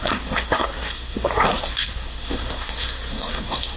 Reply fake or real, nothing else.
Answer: fake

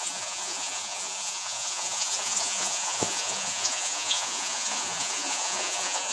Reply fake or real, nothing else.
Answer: fake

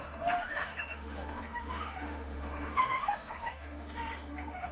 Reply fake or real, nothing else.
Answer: fake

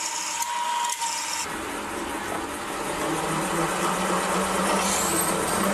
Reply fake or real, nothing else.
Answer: real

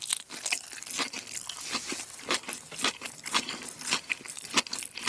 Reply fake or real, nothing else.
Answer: real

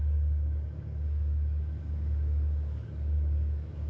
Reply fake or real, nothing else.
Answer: fake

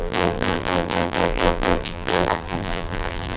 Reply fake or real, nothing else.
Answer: fake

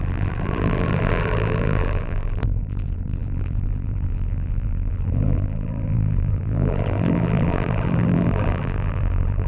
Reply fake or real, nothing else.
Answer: fake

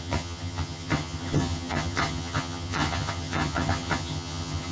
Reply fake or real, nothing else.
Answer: fake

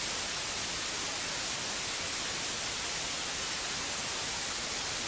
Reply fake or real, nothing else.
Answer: real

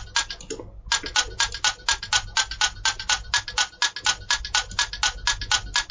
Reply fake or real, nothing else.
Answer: real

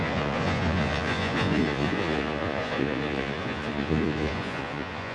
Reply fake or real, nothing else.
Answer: fake